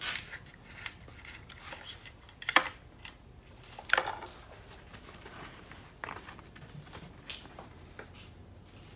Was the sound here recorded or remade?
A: recorded